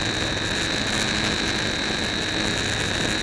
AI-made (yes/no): no